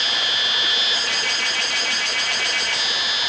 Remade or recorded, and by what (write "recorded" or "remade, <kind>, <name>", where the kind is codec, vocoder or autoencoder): recorded